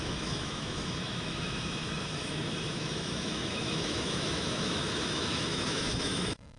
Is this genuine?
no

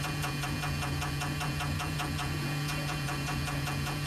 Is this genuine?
no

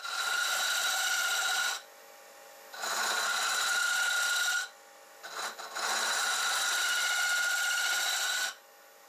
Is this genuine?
yes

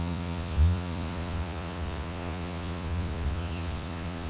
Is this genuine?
no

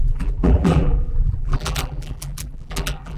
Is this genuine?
no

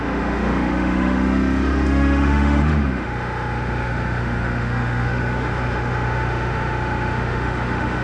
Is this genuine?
no